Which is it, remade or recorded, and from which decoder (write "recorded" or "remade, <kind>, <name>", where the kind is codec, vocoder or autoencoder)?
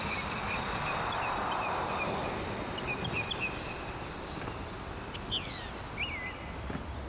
recorded